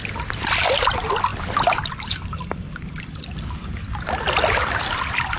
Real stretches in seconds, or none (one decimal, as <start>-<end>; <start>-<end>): 0.0-5.4